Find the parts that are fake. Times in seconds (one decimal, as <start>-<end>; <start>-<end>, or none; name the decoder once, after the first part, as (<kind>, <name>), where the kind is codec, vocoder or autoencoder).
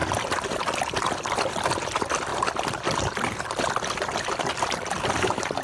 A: 0.8-2.3 (vocoder, BigVGAN v2); 3.7-5.6